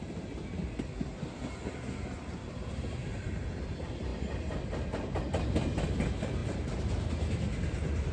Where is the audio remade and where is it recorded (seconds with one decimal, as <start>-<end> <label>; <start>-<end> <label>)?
0.0-8.1 recorded